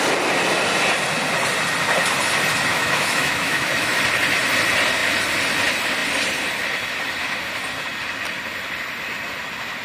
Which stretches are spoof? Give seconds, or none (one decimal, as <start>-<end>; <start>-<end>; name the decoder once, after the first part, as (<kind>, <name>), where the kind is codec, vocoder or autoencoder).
2.7-4.0 (autoencoder, DAC-VAE)